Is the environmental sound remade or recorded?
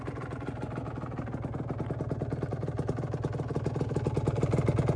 recorded